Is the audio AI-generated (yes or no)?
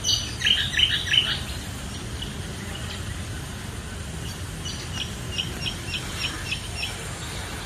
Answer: no